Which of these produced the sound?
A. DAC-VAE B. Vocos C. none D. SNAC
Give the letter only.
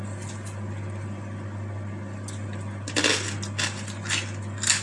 C